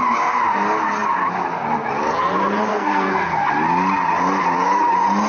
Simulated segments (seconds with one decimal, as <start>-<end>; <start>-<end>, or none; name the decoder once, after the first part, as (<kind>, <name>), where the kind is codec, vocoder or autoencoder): 2.7-3.5 (codec, SNAC)